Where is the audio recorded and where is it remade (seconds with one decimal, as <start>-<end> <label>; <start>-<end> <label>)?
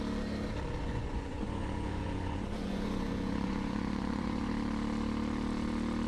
0.0-0.8 recorded; 0.8-4.5 remade; 4.5-6.1 recorded